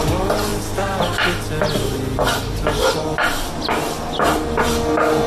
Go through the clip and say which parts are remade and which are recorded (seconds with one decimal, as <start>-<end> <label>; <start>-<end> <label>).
0.0-5.3 recorded